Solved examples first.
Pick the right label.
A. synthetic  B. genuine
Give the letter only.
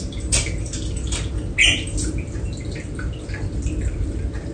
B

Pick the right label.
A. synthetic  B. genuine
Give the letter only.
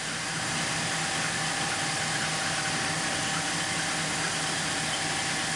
B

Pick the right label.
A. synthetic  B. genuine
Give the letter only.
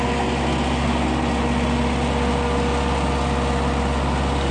B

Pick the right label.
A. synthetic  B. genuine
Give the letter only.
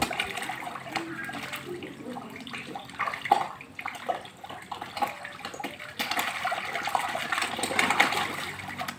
B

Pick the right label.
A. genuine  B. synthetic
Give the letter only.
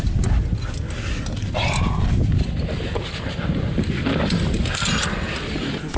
A